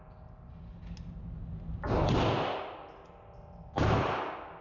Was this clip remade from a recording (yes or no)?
no